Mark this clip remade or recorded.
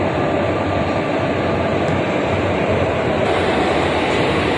remade